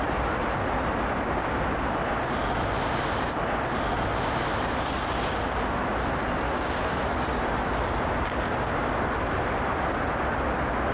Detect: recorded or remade recorded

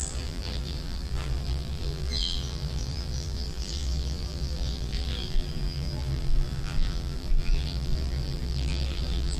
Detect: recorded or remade remade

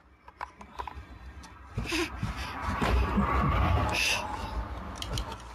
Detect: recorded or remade recorded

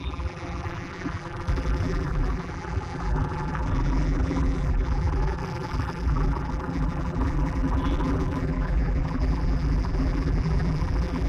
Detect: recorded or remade remade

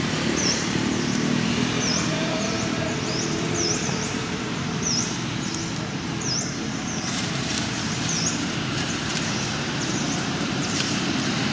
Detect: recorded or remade remade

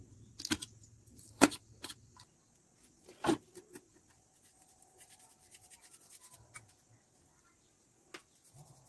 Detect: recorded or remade recorded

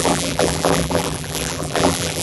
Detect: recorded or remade remade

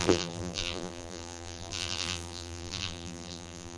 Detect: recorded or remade remade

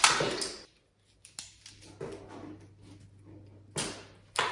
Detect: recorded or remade recorded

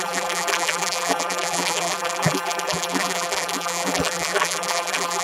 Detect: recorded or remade remade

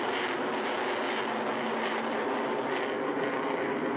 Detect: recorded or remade recorded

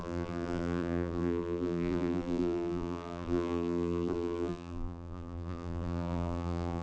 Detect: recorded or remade remade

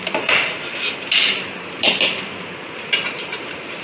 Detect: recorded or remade remade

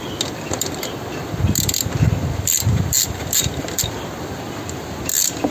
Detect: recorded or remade recorded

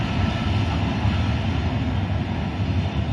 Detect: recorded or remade recorded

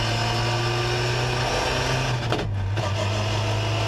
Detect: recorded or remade recorded